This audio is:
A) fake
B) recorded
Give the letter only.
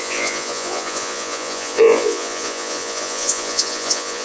A